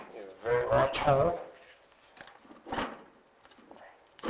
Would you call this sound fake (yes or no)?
no